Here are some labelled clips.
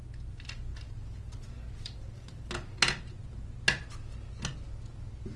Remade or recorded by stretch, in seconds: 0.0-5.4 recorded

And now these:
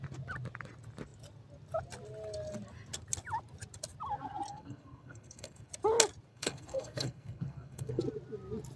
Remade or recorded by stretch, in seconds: 0.0-4.5 recorded; 4.5-5.7 remade; 5.7-6.3 recorded; 6.3-8.0 remade; 8.0-8.8 recorded

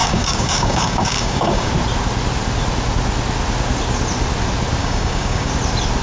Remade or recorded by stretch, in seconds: 0.0-1.7 remade; 1.7-4.8 recorded; 4.8-5.5 remade; 5.5-6.0 recorded

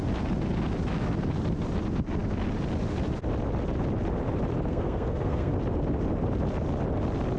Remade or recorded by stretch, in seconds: 0.0-4.7 recorded; 4.7-5.5 remade; 5.5-7.4 recorded

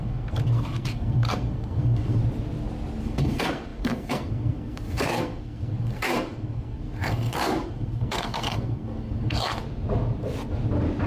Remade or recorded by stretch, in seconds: 0.0-2.2 remade; 2.2-3.0 recorded; 3.0-9.6 remade; 9.6-11.1 recorded

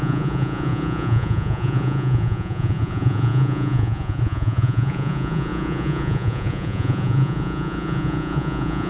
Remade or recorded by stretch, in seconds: 0.0-8.9 remade

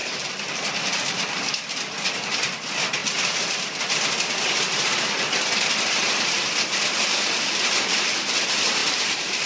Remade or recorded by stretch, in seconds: 0.0-1.2 remade; 1.2-8.8 recorded; 8.8-9.5 remade

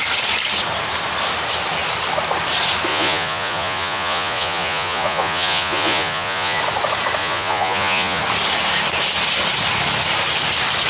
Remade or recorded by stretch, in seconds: 0.0-2.9 recorded; 2.9-6.6 remade; 6.6-7.2 recorded; 7.2-8.2 remade; 8.2-10.9 recorded